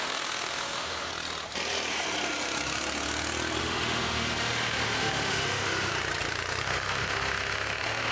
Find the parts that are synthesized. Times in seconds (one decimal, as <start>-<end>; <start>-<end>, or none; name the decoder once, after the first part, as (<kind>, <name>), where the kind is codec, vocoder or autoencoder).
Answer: 0.0-1.1 (autoencoder, DAC-VAE); 3.6-5.9; 6.6-8.1